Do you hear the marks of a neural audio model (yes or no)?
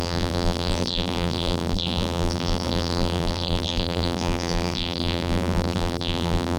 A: yes